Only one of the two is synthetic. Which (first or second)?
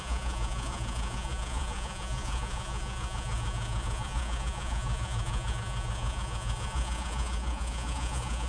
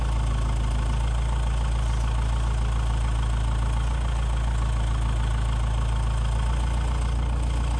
first